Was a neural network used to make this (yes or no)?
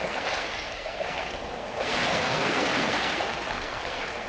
yes